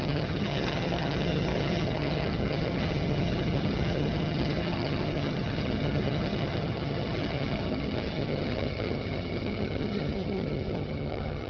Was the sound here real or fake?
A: fake